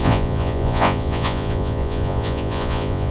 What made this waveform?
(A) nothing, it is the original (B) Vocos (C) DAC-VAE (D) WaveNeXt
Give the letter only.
B